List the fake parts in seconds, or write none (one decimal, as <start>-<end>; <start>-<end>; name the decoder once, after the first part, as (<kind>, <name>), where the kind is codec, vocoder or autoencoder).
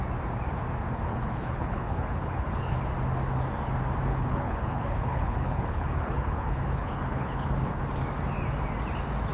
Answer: 1.1-2.8 (codec, HILCodec); 4.1-7.8